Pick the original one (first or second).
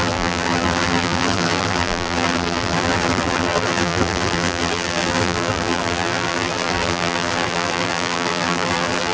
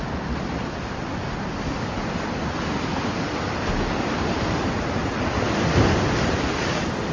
second